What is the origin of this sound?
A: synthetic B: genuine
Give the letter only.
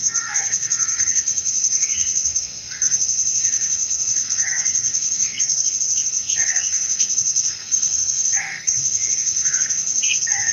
A